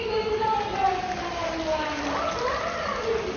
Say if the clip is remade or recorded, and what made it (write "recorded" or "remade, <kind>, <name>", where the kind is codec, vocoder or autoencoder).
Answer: recorded